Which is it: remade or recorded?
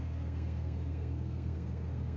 remade